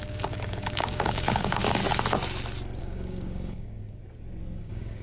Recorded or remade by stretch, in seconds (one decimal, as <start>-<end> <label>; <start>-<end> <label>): 0.0-1.8 remade; 1.8-2.8 recorded; 2.8-4.0 remade; 4.0-4.6 recorded; 4.6-5.0 remade